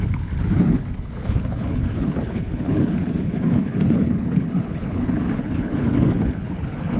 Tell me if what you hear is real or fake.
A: fake